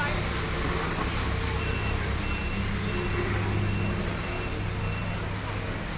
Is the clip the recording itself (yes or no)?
yes